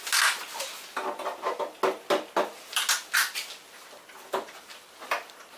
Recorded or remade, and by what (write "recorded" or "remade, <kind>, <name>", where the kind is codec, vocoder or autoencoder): recorded